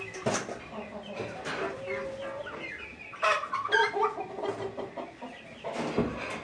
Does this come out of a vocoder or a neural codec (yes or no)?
no